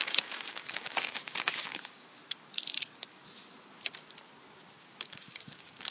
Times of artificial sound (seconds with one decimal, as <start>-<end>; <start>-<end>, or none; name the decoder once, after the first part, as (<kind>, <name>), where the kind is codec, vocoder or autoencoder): 0.0-2.2 (codec, DAC); 2.7-3.2; 4.7-5.9